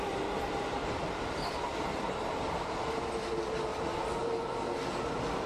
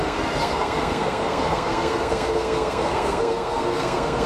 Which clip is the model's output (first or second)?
second